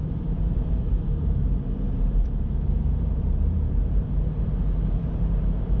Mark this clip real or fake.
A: fake